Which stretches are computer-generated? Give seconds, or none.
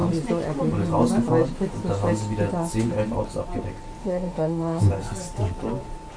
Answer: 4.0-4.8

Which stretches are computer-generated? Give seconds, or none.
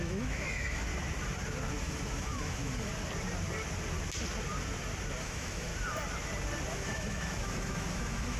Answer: 0.0-0.9; 1.8-2.9; 5.2-5.7; 6.7-8.4